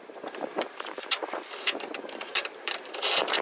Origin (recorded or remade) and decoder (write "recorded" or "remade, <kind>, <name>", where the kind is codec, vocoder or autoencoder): remade, vocoder, BigVGAN v2